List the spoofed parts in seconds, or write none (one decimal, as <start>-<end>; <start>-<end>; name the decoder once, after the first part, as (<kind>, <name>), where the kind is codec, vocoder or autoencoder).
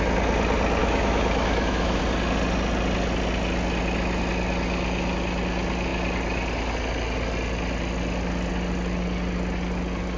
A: 0.8-2.0 (autoencoder, DAC-VAE)